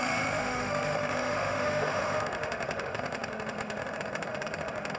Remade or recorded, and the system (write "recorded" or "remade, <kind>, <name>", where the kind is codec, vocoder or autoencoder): remade, autoencoder, DAC-VAE